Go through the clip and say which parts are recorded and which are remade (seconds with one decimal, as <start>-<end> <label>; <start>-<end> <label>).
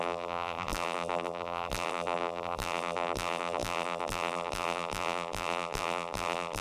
0.0-6.6 remade